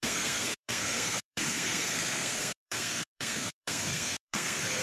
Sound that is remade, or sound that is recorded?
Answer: remade